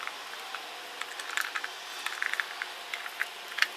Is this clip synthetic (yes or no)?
no